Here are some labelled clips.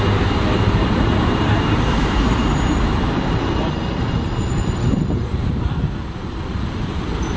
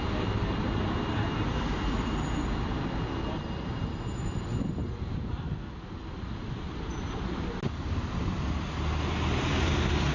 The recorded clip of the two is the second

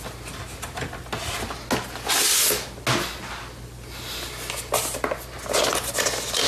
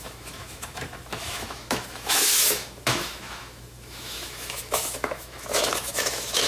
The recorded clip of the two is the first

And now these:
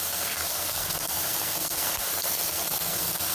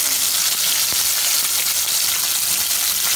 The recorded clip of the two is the second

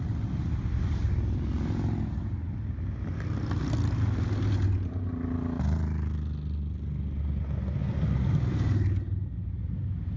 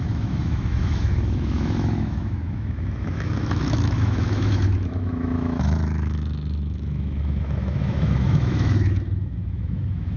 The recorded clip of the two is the first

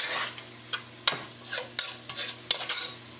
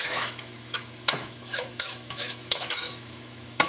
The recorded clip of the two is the first